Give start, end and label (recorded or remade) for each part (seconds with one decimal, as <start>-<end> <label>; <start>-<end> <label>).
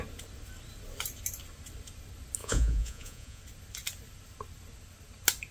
0.0-2.4 recorded; 2.4-3.4 remade; 3.4-5.5 recorded